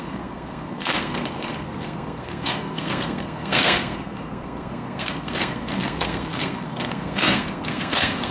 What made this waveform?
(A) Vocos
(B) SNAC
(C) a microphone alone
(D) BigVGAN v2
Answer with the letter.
B